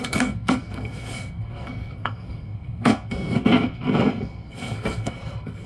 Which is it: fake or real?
fake